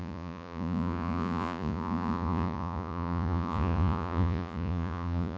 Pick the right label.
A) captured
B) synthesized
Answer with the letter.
B